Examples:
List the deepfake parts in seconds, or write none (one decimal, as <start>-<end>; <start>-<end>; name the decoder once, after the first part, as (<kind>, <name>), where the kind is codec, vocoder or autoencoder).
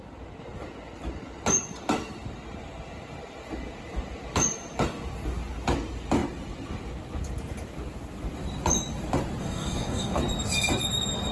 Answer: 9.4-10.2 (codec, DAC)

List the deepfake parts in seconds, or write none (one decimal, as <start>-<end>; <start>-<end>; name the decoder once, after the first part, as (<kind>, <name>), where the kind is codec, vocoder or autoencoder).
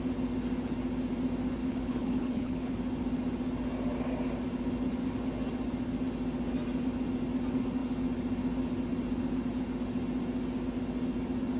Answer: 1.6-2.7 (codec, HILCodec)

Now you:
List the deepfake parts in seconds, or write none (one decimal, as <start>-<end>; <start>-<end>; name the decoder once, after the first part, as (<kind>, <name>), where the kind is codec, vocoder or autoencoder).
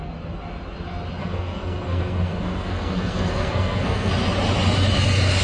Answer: 1.2-4.1 (codec, SNAC)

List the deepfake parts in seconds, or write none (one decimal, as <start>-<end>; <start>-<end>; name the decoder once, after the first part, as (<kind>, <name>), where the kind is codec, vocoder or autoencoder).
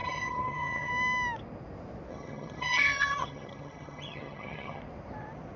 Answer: 0.0-0.9 (vocoder, HiFi-GAN); 2.1-4.8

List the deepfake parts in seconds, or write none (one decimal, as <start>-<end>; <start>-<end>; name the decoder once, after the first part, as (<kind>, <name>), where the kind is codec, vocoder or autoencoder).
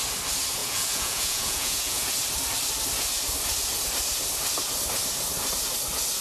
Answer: 0.6-2.1 (vocoder, Vocos)